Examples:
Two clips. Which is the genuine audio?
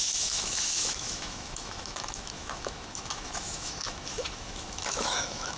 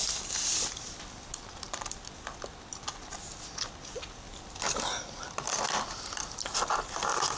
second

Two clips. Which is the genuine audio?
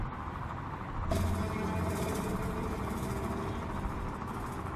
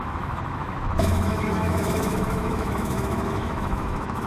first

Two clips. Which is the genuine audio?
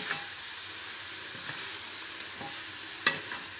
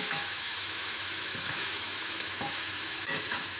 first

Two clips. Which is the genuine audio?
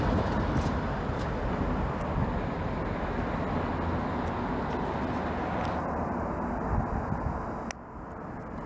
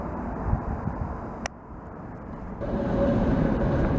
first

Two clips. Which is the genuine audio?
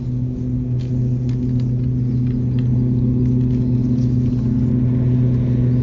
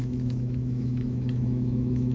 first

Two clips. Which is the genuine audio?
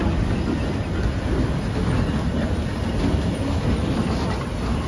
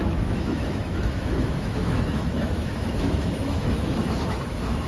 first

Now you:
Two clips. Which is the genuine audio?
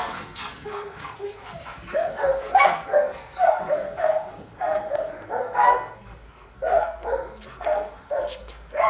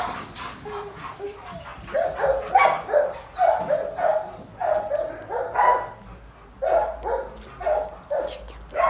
second